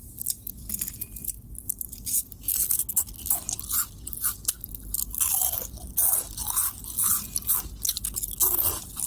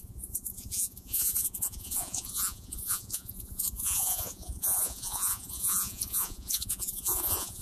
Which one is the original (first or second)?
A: first